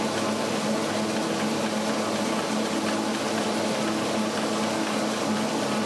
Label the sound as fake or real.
real